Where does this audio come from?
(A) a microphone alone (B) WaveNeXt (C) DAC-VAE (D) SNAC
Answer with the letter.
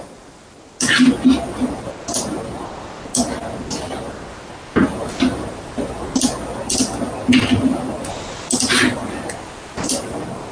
A